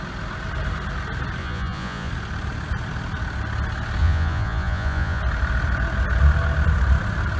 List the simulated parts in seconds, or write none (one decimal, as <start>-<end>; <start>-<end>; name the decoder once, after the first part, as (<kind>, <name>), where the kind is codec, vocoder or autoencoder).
1.4-2.1 (vocoder, Vocos); 4.0-5.2